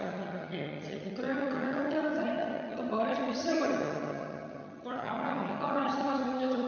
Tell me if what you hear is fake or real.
fake